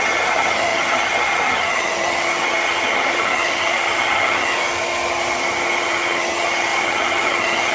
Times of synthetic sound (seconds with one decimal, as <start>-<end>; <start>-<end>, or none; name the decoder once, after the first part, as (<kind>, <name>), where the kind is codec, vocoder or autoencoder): 0.0-4.5 (vocoder, HiFi-GAN); 5.8-7.7